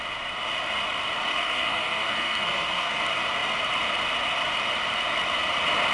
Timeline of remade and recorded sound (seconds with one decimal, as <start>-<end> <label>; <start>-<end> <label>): 0.0-1.3 recorded; 1.3-3.0 remade; 3.0-5.9 recorded